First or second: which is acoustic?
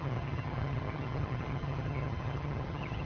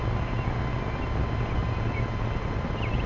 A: second